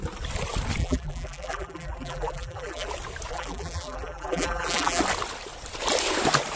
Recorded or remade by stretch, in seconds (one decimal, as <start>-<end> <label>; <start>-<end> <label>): 0.0-0.8 recorded; 0.8-2.9 remade; 2.9-3.3 recorded; 3.3-5.0 remade; 5.0-6.6 recorded